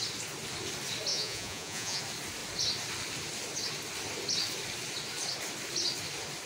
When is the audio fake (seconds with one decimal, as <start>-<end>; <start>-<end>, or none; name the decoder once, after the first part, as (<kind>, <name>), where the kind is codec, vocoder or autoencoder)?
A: 1.1-2.0 (vocoder, Vocos)